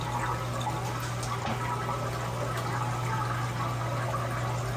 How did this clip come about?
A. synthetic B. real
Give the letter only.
B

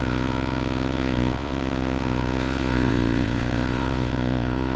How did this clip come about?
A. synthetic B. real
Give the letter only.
A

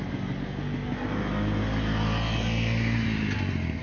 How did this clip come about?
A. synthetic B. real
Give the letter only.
B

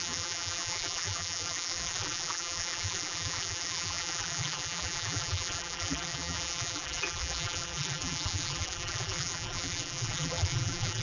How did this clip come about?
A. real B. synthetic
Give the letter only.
B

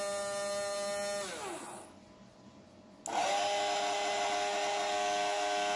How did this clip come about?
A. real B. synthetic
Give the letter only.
A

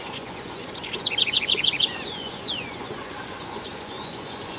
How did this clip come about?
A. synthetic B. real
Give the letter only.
A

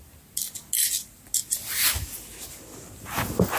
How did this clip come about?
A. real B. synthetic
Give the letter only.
A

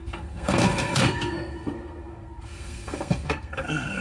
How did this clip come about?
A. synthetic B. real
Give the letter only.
A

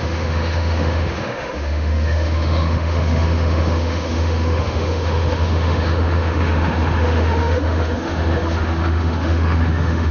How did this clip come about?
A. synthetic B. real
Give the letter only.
A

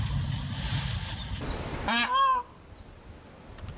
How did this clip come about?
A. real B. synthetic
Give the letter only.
A